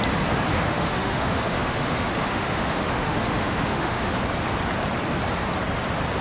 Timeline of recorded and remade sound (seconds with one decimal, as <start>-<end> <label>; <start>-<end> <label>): 0.0-0.5 recorded; 0.5-4.2 remade; 4.2-6.2 recorded